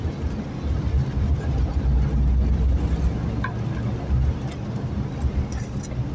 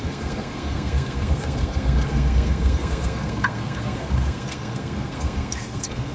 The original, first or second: first